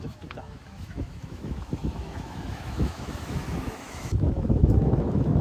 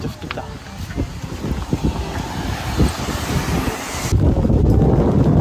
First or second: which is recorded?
second